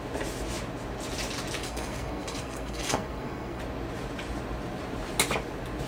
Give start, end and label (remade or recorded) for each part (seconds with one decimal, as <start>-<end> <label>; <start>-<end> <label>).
0.0-1.6 recorded; 1.6-3.6 remade; 3.6-5.9 recorded